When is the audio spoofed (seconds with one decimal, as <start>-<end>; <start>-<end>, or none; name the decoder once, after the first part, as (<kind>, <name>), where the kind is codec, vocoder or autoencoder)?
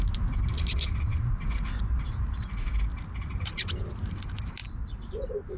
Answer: none